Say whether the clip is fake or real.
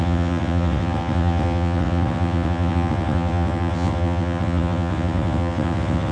fake